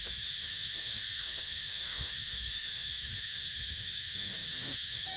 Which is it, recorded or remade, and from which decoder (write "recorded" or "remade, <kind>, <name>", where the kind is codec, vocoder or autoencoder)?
remade, autoencoder, DAC-VAE